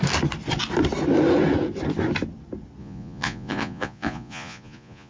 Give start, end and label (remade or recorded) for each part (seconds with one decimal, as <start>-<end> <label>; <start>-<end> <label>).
0.0-2.8 recorded; 2.8-5.1 remade